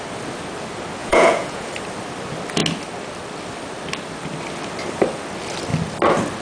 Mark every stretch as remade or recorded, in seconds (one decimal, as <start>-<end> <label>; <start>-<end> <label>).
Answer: 0.0-1.0 recorded; 1.0-1.7 remade; 1.7-6.4 recorded